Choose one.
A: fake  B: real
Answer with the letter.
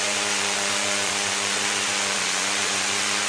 A